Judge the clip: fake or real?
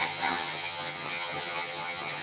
fake